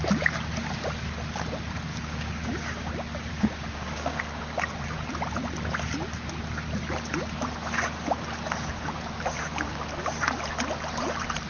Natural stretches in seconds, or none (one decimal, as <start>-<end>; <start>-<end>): 0.0-1.9; 2.9-3.3; 4.2-11.5